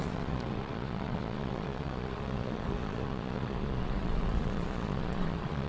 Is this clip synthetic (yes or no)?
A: yes